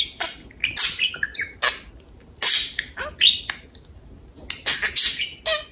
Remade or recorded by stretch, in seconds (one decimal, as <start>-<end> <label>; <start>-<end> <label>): 0.0-5.7 recorded